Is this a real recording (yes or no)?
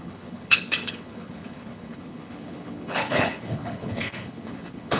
no